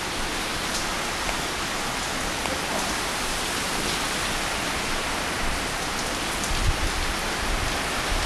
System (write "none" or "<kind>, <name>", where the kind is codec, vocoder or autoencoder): none